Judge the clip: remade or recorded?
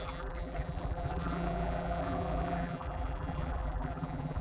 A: remade